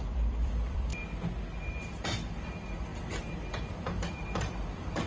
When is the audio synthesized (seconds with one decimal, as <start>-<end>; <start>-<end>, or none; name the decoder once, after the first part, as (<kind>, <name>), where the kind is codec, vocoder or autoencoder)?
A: 0.0-0.9 (vocoder, BigVGAN v2); 1.7-5.1

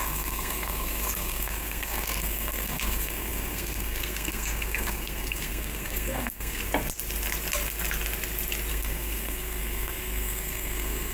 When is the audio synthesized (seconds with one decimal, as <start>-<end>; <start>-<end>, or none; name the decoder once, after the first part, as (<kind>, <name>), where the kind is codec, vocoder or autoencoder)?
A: 0.0-6.6 (codec, SNAC); 8.7-11.1

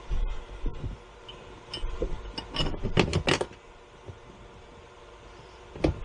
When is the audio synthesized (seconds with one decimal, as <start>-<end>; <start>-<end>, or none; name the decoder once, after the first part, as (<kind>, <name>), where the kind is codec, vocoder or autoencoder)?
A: none

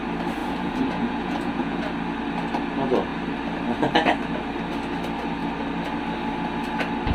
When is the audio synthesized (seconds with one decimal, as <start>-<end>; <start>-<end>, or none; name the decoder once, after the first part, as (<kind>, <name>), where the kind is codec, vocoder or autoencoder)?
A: 0.4-1.8 (vocoder, Vocos)

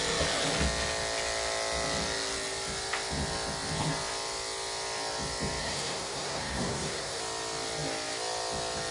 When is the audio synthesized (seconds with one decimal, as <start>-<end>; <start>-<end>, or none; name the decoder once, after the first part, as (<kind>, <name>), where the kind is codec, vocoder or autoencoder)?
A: 5.6-7.2 (codec, SNAC)

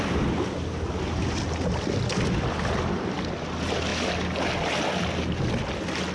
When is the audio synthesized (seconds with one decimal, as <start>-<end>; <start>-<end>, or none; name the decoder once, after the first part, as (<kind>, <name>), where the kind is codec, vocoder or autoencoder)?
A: none

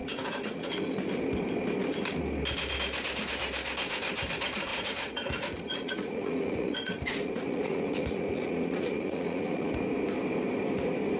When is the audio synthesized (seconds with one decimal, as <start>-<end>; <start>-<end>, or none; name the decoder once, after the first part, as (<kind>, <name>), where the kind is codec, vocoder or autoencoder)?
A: 0.0-0.7 (vocoder, Vocos); 4.7-9.7

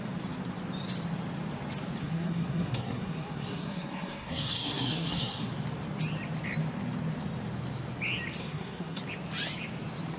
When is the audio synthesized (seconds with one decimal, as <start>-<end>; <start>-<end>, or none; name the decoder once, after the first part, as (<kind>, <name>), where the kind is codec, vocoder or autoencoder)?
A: 2.0-5.5 (codec, SNAC); 8.4-9.0